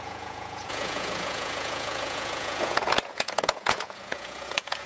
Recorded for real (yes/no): no